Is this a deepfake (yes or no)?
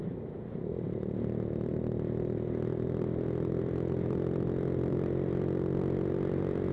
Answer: yes